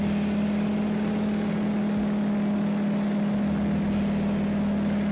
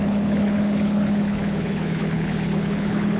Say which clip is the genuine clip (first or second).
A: first